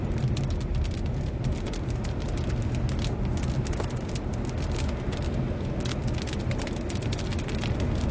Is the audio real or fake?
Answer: real